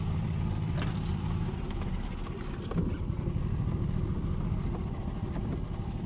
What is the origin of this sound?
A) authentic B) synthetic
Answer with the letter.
A